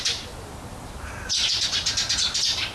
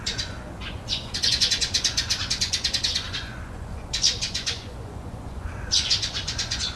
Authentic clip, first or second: first